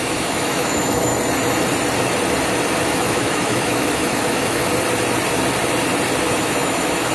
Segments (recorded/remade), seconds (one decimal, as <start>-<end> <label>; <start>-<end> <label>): 0.0-1.1 remade; 1.1-2.8 recorded; 2.8-4.7 remade; 4.7-6.2 recorded; 6.2-7.1 remade